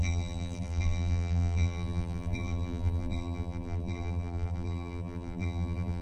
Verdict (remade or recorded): remade